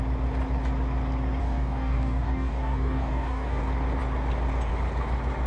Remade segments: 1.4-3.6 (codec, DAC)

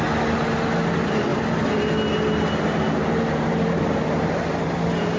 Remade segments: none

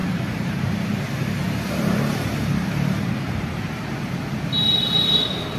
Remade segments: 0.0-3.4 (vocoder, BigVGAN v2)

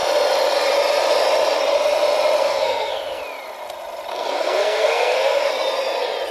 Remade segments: 2.4-3.2 (codec, SNAC); 4.1-5.5

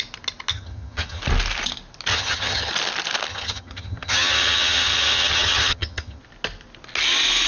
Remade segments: 0.5-1.2 (vocoder, HiFi-GAN); 2.1-2.7; 3.3-6.2

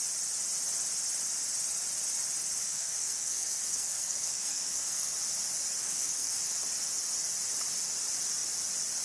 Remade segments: 2.6-5.1 (codec, SNAC); 5.8-6.4

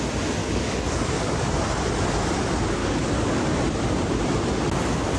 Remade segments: 0.4-1.5 (codec, DAC); 2.8-3.6